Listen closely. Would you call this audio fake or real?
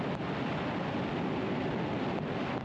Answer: real